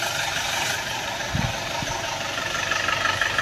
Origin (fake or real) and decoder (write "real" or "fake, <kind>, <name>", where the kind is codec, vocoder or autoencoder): real